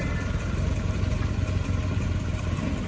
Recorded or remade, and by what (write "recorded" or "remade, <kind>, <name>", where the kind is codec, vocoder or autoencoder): recorded